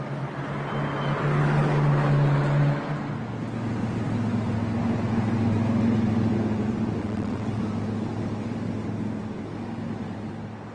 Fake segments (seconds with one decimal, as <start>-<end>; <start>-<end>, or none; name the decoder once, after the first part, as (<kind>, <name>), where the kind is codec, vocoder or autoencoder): 7.0-7.6 (vocoder, WaveNeXt)